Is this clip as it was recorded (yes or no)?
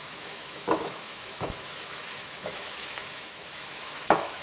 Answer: no